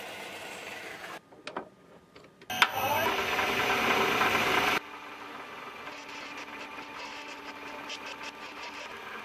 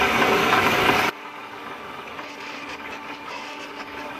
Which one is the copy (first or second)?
second